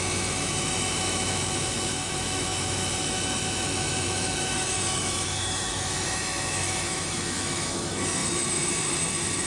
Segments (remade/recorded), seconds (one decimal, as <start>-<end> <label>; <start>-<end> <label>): 0.0-9.5 remade